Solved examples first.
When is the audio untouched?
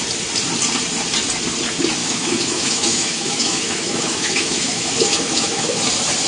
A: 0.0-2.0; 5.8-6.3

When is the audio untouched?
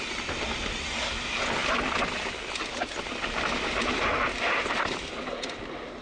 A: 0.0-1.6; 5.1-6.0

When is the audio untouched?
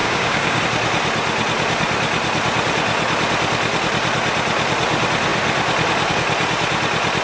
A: 0.6-7.2